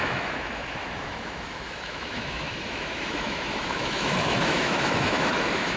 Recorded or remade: remade